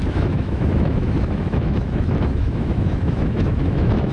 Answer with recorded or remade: remade